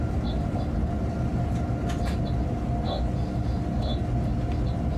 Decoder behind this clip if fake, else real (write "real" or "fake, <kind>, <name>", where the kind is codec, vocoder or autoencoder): real